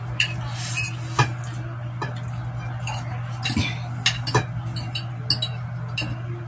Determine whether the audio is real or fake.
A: real